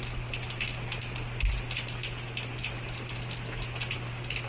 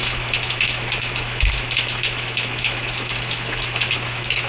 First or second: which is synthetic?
second